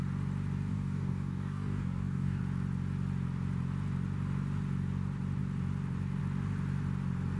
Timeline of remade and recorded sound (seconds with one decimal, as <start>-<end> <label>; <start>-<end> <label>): 0.0-0.7 recorded; 0.7-2.4 remade; 2.4-7.4 recorded

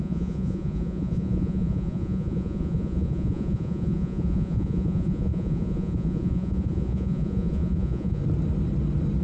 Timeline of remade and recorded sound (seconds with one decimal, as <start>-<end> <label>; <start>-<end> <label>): 0.0-8.2 remade; 8.2-9.2 recorded

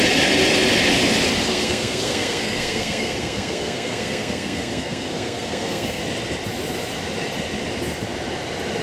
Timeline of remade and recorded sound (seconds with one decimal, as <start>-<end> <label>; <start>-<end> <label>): 0.0-1.5 recorded; 1.5-6.0 remade; 6.0-8.8 recorded

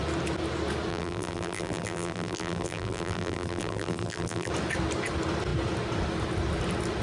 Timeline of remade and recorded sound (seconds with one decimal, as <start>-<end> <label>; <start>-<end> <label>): 0.0-0.9 recorded; 0.9-4.5 remade; 4.5-7.0 recorded

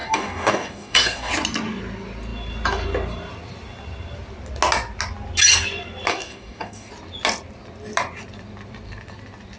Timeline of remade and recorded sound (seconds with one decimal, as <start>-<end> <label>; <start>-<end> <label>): 0.0-1.3 remade; 1.3-6.1 recorded; 6.1-6.9 remade; 6.9-9.6 recorded

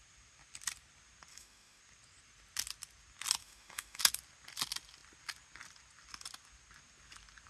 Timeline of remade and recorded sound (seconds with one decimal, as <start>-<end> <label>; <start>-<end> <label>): 0.0-1.3 recorded; 1.3-1.8 remade; 1.8-3.4 recorded; 3.4-4.0 remade; 4.0-7.5 recorded

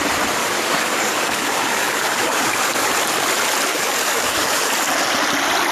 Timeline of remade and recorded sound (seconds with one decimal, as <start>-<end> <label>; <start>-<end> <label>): 0.0-0.4 recorded; 0.4-2.9 remade; 2.9-3.7 recorded; 3.7-4.7 remade; 4.7-5.7 recorded